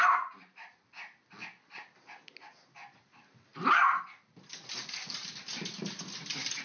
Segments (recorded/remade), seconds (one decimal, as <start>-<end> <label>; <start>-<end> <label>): 0.0-6.6 recorded